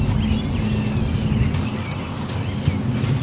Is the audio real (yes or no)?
yes